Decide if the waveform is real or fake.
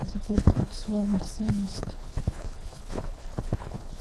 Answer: fake